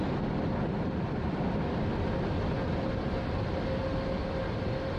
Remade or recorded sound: recorded